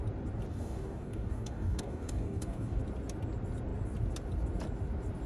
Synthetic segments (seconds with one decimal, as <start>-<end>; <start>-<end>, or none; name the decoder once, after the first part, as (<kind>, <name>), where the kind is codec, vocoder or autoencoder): 0.5-2.8 (codec, DAC)